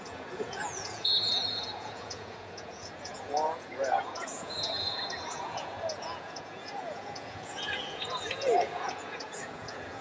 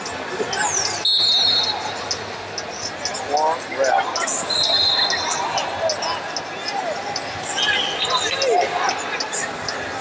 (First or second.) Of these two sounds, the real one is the second